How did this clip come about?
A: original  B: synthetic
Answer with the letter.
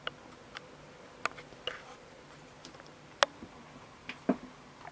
A